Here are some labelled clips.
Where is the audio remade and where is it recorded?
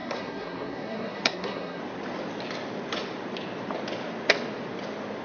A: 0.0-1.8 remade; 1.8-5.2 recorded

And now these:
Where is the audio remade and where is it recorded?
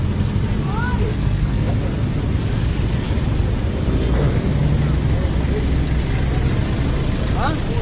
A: 0.0-1.1 recorded; 1.1-1.7 remade; 1.7-7.8 recorded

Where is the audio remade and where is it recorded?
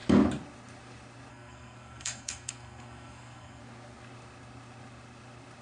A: 0.0-1.3 recorded; 1.3-3.6 remade; 3.6-5.6 recorded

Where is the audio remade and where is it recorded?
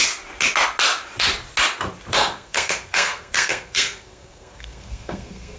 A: 0.0-2.1 recorded; 2.1-5.6 remade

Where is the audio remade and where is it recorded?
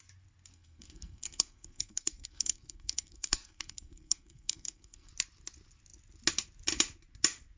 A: 0.0-0.5 recorded; 0.5-5.1 remade; 5.1-7.6 recorded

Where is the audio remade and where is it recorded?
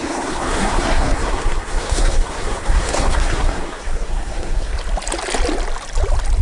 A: 0.0-4.7 remade; 4.7-6.4 recorded